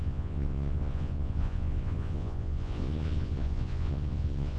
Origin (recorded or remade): remade